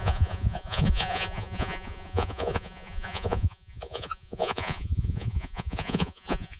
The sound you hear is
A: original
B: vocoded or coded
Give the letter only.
B